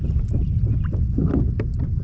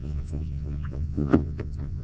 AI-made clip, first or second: second